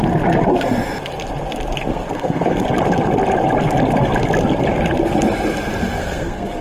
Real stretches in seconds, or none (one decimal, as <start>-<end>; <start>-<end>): 0.0-1.9; 2.6-6.0